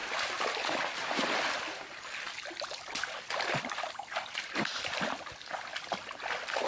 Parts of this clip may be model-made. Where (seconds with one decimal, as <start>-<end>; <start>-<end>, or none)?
none